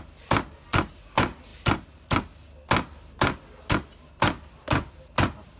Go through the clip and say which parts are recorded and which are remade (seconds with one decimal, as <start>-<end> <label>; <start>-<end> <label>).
0.0-5.6 recorded